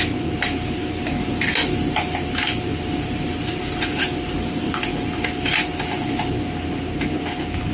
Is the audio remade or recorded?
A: recorded